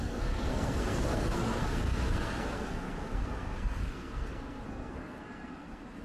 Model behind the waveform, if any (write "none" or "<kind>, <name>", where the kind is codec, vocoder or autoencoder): codec, SNAC